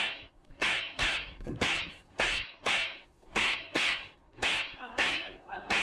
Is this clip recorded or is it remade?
remade